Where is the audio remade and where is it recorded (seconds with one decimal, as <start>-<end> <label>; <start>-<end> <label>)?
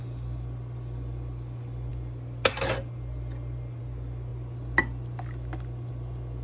0.0-6.4 recorded